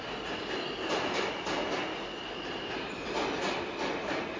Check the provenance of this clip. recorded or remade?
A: recorded